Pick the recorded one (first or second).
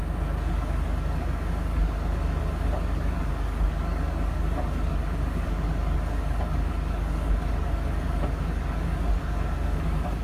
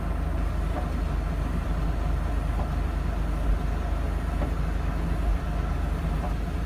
second